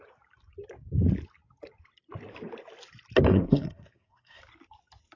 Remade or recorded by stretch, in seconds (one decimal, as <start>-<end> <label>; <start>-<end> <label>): 0.0-3.3 recorded; 3.3-4.4 remade; 4.4-5.2 recorded